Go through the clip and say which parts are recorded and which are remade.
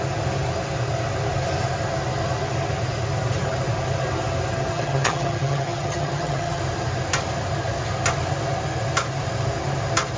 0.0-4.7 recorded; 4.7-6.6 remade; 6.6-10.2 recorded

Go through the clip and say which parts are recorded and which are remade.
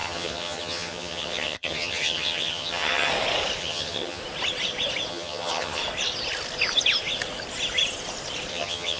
0.0-3.1 remade; 3.1-3.6 recorded; 3.6-4.2 remade; 4.2-5.1 recorded; 5.1-5.8 remade; 5.8-8.5 recorded; 8.5-9.0 remade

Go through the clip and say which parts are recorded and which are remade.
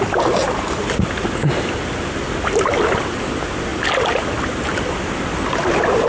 0.0-6.1 recorded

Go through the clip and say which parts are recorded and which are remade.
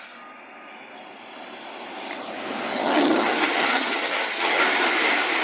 0.0-2.7 recorded; 2.7-4.6 remade; 4.6-5.4 recorded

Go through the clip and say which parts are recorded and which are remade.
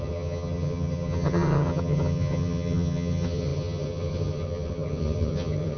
0.0-5.8 remade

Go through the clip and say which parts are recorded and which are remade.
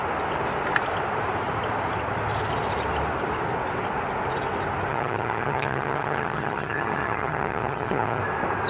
0.0-4.9 recorded; 4.9-8.2 remade; 8.2-8.7 recorded